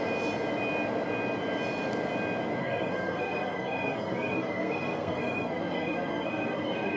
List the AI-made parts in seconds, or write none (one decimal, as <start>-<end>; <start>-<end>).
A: 2.6-7.0